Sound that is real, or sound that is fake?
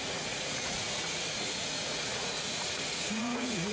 fake